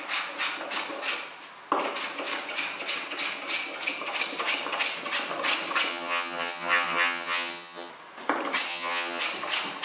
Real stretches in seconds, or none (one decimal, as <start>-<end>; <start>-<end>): 0.0-5.9; 7.9-8.7; 9.2-9.8